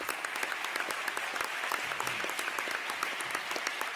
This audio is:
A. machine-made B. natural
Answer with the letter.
B